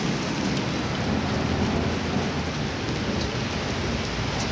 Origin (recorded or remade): recorded